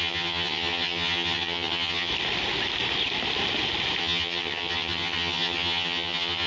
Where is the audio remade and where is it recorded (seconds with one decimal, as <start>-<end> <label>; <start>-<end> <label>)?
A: 0.0-2.1 remade; 2.1-4.0 recorded; 4.0-6.5 remade